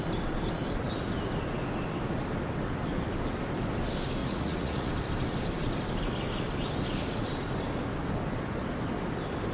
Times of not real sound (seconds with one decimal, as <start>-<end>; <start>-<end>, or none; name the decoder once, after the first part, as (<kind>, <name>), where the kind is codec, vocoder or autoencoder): 4.2-4.9 (vocoder, Vocos)